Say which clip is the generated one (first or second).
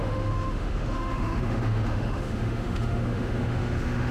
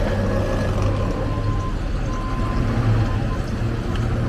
first